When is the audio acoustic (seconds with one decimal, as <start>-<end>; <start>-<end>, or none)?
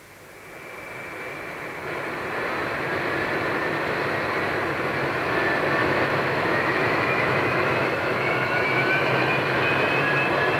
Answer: 0.0-5.8; 9.3-10.6